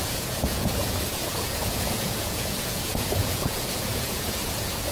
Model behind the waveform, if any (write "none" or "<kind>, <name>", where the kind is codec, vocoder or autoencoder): vocoder, Vocos